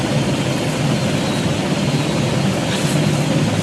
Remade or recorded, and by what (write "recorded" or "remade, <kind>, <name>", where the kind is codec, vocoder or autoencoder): recorded